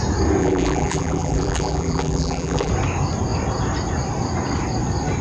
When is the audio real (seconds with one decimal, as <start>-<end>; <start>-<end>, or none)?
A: 0.0-0.4; 2.7-5.2

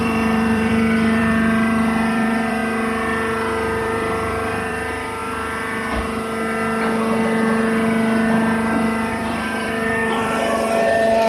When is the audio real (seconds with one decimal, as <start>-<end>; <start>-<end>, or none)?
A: 2.6-3.8; 5.2-9.1

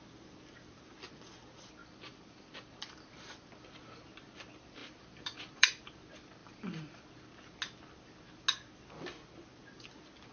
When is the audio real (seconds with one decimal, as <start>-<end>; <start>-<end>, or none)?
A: 0.0-1.8; 3.5-4.8; 5.7-6.4; 7.0-10.3

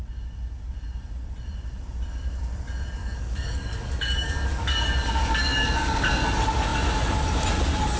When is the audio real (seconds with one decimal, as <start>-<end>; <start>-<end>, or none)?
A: 0.0-3.0; 6.2-8.0

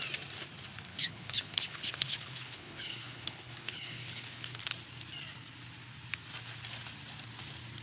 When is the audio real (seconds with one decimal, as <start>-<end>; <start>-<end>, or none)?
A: 0.0-0.9; 4.6-7.8

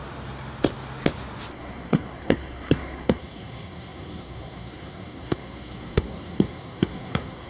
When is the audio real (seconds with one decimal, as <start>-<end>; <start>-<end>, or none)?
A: 0.0-1.5

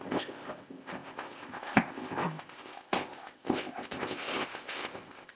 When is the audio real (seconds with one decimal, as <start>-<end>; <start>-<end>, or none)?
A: none

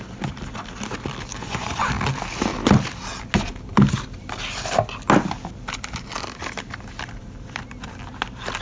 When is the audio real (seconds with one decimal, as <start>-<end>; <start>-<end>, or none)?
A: 0.0-1.3; 1.9-8.6